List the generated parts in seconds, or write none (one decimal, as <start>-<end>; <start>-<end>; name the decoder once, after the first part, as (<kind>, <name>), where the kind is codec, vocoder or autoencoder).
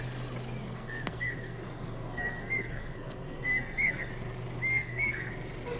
0.6-4.1 (codec, SNAC); 4.7-5.3